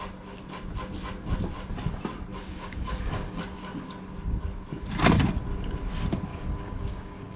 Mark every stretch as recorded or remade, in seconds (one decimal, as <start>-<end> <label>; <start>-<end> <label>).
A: 0.0-2.3 recorded; 2.3-3.4 remade; 3.4-6.3 recorded; 6.3-7.4 remade